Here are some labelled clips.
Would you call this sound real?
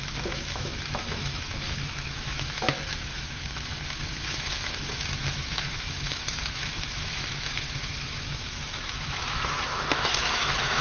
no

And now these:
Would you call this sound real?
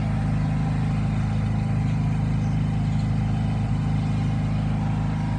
yes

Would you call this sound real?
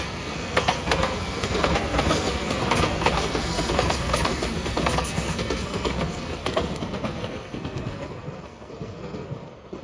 no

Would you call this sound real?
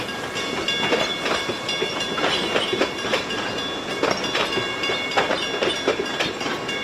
yes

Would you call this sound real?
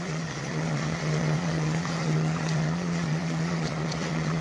no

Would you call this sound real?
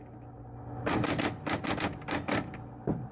yes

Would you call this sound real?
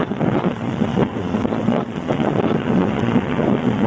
no